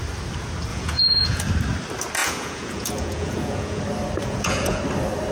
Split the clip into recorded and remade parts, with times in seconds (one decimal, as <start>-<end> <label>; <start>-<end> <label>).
0.0-0.7 recorded; 0.7-1.4 remade; 1.4-2.2 recorded; 2.2-3.8 remade; 3.8-4.2 recorded; 4.2-4.8 remade; 4.8-5.3 recorded